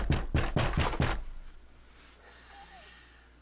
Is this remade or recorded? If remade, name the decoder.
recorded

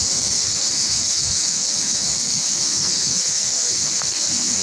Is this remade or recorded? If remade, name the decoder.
remade, codec, SNAC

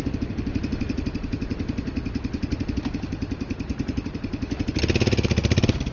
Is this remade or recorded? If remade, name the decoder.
recorded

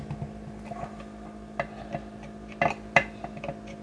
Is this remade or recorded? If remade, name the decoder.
recorded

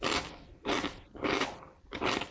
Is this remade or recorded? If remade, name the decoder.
recorded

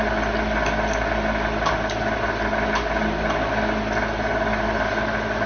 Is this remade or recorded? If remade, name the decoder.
recorded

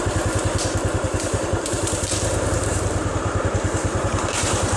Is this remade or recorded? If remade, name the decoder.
remade, vocoder, BigVGAN v2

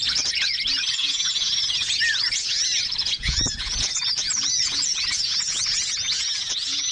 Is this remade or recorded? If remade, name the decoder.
remade, vocoder, Vocos